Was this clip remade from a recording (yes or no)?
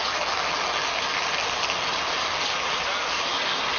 no